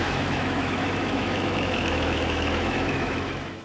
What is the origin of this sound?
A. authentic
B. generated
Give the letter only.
B